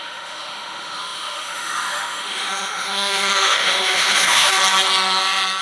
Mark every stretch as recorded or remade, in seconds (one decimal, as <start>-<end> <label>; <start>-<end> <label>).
0.0-4.6 remade; 4.6-5.6 recorded